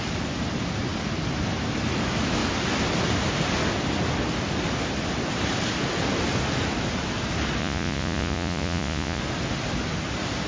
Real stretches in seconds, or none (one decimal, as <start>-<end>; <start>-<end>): 0.0-7.6; 9.2-10.5